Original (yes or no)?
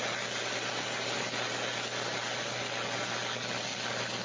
yes